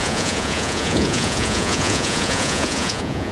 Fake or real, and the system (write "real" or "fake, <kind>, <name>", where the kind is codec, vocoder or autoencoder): fake, vocoder, Vocos